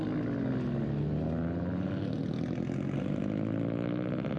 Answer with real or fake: real